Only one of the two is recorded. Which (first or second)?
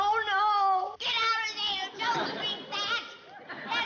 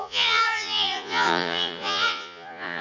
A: first